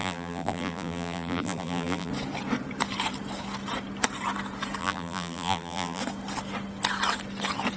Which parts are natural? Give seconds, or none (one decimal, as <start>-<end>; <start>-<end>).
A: 2.1-4.8; 6.0-7.8